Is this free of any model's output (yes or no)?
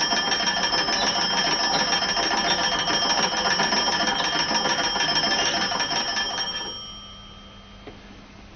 yes